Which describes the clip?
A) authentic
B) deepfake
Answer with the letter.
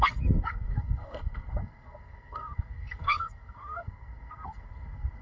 B